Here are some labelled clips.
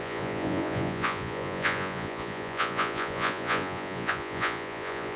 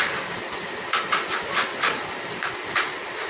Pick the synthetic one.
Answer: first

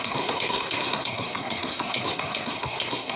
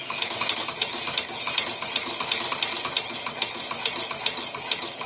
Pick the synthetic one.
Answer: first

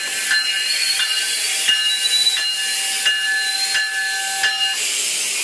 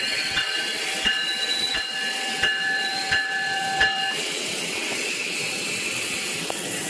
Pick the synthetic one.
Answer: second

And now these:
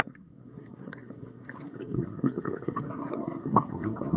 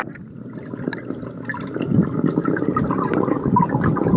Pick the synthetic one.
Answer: first